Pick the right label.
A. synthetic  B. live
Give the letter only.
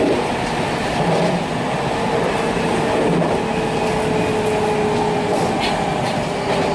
B